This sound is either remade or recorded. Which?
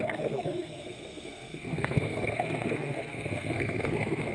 remade